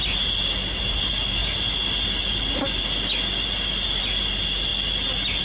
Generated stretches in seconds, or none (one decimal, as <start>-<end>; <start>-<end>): none